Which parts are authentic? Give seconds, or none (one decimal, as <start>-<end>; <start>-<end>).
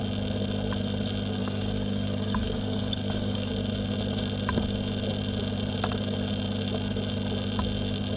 0.0-1.4; 3.5-8.2